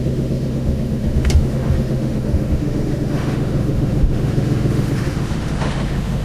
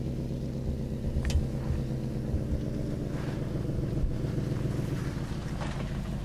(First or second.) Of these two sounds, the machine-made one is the first